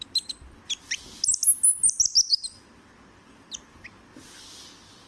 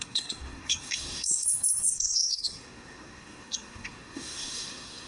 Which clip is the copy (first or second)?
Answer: second